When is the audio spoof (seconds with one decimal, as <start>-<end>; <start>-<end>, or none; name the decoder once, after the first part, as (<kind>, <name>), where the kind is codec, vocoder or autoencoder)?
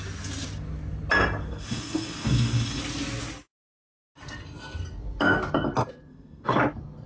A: 1.4-2.8 (codec, SNAC); 6.1-6.6